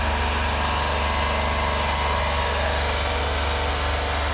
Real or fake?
real